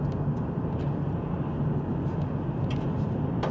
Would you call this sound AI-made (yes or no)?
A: no